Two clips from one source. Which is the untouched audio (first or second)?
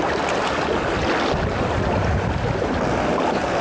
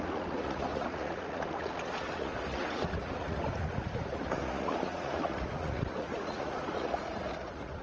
first